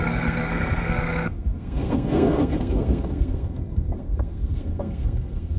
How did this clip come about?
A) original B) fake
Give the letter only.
B